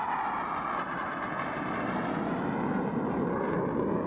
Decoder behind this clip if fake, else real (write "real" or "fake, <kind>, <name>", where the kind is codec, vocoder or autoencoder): real